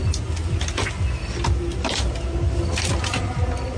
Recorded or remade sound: recorded